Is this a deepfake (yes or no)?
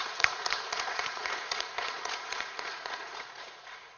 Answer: yes